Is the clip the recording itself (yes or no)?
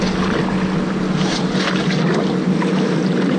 yes